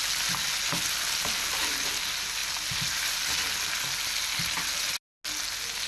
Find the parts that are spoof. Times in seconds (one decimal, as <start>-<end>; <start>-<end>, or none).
none